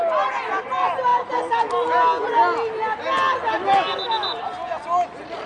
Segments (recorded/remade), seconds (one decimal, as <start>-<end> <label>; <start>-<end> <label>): 0.0-5.5 recorded